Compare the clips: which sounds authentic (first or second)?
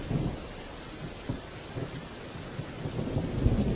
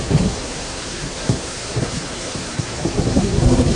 first